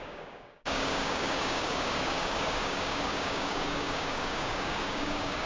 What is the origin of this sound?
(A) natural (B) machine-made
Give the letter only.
B